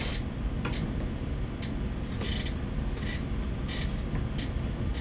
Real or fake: real